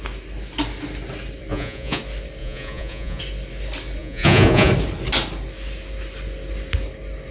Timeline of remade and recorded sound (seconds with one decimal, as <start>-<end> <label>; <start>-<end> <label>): 0.0-1.5 recorded; 1.5-2.0 remade; 2.0-2.4 recorded; 2.4-3.2 remade; 3.2-4.0 recorded; 4.0-4.7 remade; 4.7-7.3 recorded